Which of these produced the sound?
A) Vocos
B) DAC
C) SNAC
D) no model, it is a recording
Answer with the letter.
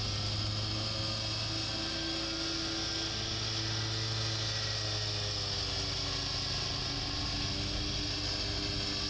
D